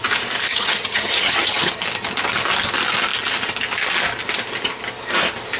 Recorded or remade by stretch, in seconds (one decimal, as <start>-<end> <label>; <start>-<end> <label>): 0.0-0.5 recorded; 0.5-1.7 remade; 1.7-5.6 recorded